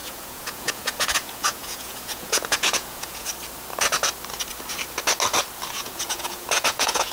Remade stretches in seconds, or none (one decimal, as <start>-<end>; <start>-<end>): 0.0-3.3; 5.7-7.1